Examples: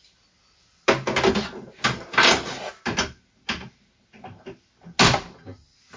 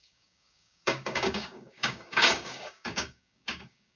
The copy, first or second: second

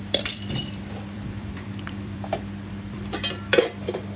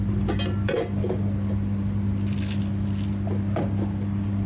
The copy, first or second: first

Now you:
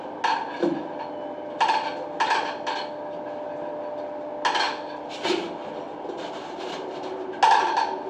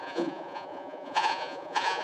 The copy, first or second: second